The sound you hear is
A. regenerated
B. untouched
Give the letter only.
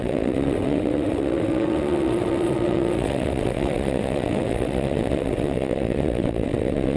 A